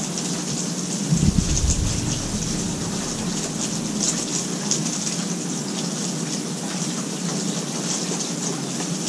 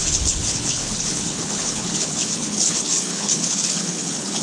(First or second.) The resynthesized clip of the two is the second